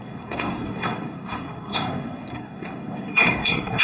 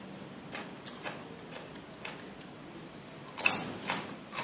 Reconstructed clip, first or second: first